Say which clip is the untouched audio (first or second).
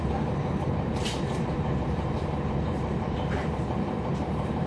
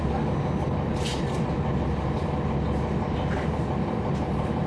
second